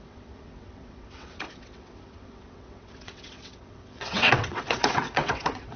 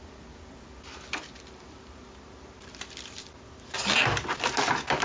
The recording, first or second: second